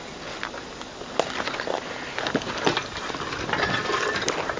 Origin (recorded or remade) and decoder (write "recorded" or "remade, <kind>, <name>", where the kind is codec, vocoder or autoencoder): recorded